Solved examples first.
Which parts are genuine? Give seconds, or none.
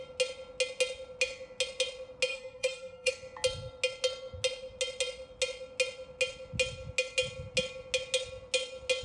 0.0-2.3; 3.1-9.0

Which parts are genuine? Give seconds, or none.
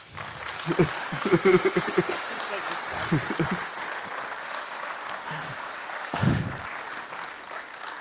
0.0-1.0; 2.4-4.4; 6.4-8.0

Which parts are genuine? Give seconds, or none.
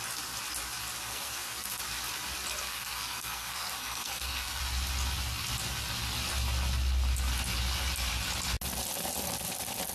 0.0-1.1; 1.8-2.6; 4.6-9.9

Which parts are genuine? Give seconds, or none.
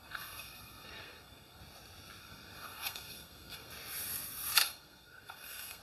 1.6-2.2; 3.7-4.6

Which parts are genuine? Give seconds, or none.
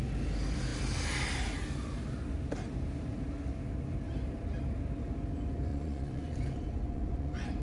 0.0-5.7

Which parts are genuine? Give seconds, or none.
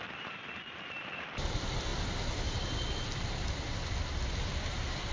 none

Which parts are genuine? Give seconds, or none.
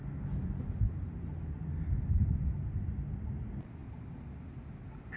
0.0-5.2